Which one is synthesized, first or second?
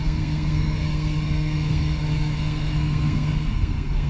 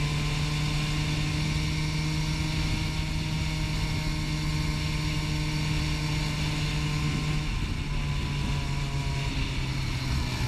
first